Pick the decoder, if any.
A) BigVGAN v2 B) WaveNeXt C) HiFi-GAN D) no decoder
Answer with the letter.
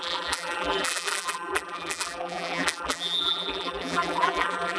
A